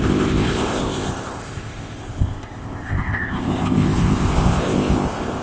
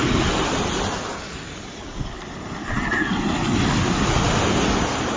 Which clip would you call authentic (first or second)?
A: second